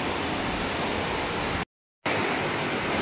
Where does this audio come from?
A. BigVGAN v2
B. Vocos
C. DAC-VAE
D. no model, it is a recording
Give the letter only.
D